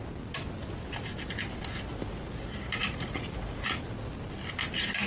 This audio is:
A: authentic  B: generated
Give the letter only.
A